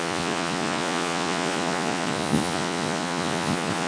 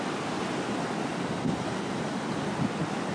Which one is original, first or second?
second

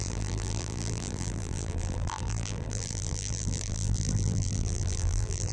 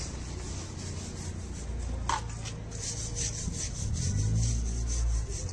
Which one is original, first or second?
second